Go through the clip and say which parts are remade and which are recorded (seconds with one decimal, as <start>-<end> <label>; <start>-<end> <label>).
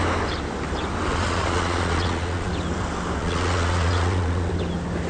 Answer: 0.0-1.1 recorded; 1.1-2.5 remade; 2.5-3.2 recorded; 3.2-4.5 remade; 4.5-5.1 recorded